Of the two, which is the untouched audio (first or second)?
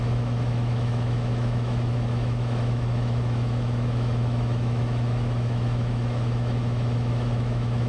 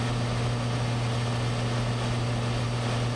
second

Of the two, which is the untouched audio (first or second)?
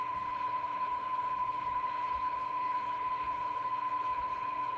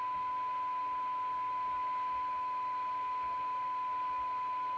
second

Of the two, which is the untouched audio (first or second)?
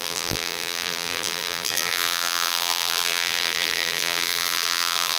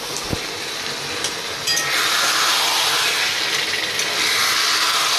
second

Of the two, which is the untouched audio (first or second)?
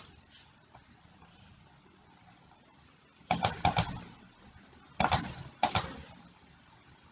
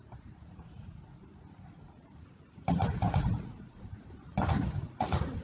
first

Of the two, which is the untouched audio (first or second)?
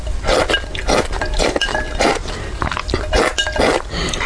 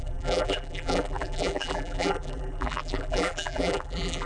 first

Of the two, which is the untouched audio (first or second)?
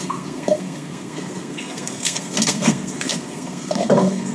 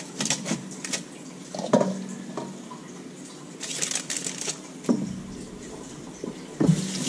second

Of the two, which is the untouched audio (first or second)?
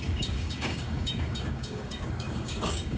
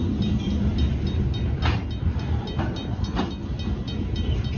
second